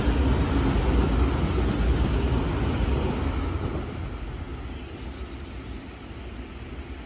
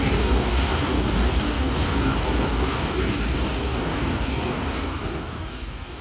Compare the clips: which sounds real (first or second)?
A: first